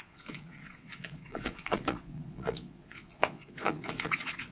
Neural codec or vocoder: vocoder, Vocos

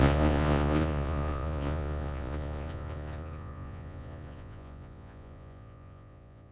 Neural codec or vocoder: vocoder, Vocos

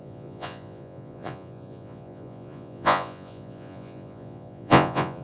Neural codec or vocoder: vocoder, Vocos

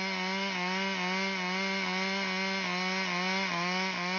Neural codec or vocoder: none